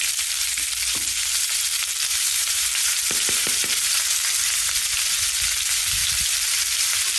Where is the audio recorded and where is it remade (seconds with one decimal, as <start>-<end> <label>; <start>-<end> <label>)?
0.0-2.1 recorded; 2.1-4.7 remade; 4.7-7.2 recorded